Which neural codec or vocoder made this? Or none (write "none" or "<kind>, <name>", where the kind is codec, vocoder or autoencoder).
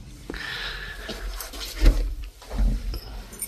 vocoder, BigVGAN v2